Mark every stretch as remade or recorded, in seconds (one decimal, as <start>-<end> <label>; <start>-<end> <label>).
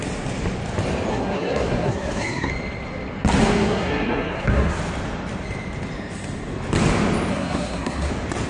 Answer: 0.0-1.1 recorded; 1.1-2.5 remade; 2.5-3.4 recorded; 3.4-4.8 remade; 4.8-7.3 recorded; 7.3-8.1 remade; 8.1-8.5 recorded